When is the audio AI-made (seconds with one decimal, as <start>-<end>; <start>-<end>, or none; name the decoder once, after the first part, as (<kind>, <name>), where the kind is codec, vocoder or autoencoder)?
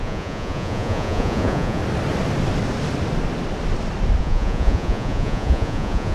0.0-1.8 (vocoder, Vocos); 4.2-6.1